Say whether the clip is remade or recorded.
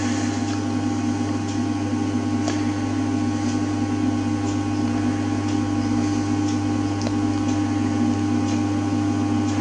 recorded